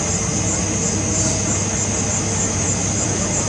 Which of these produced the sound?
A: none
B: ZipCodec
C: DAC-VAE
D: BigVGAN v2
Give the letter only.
A